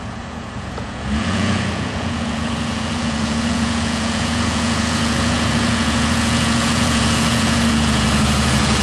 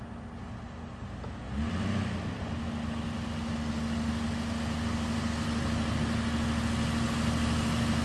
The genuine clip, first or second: second